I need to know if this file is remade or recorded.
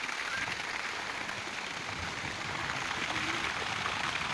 remade